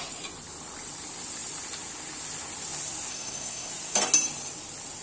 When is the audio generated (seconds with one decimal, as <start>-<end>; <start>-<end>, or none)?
3.1-3.7